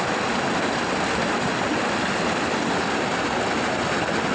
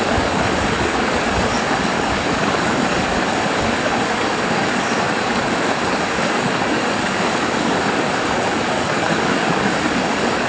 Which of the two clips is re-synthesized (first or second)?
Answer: second